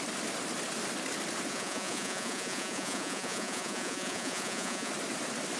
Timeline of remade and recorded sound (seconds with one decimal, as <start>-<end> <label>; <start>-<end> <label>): 0.0-1.5 recorded; 1.5-4.9 remade; 4.9-5.6 recorded